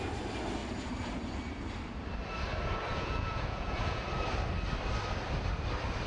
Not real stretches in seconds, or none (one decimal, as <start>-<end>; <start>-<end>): 2.9-4.0